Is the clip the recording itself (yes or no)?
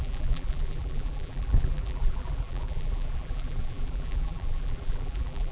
no